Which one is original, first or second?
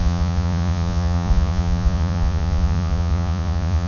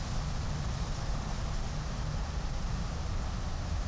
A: second